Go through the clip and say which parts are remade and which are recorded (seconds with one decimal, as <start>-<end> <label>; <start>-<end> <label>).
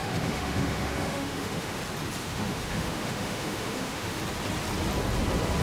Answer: 0.0-1.8 remade; 1.8-2.2 recorded; 2.2-4.2 remade; 4.2-5.6 recorded